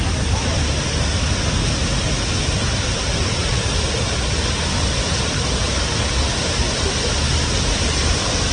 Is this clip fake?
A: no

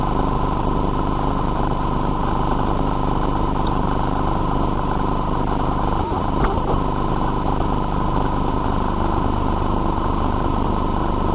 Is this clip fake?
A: no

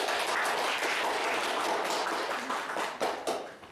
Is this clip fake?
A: no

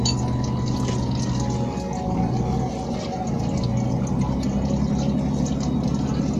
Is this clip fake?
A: no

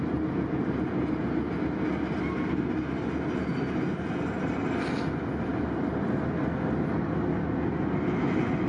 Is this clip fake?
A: no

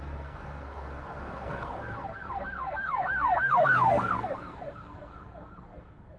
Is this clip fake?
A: yes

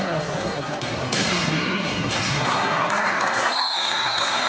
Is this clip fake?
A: yes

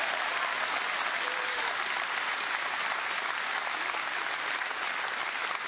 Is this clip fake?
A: no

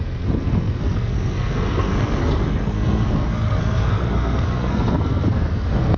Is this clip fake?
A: yes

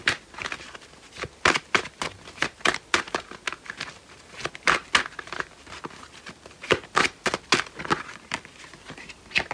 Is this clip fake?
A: no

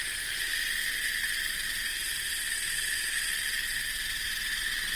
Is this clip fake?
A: no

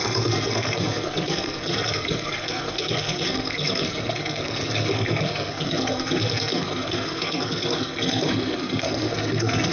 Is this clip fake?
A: yes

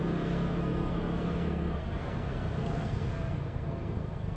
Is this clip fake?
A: yes